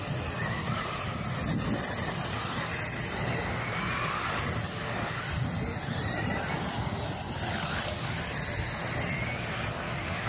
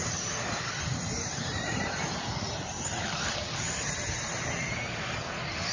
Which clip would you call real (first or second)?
first